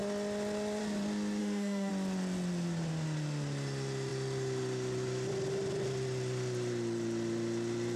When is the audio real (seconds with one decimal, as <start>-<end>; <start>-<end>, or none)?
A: 0.0-1.4; 1.9-8.0